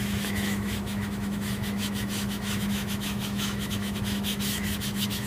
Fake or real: fake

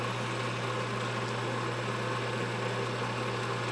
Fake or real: real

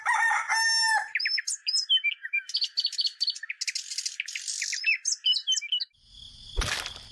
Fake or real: real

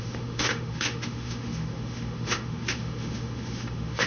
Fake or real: fake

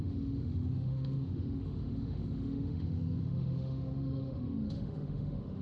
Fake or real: fake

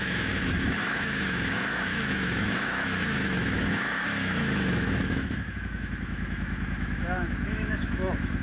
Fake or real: fake